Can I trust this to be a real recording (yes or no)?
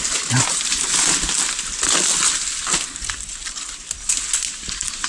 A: yes